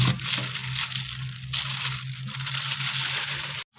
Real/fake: real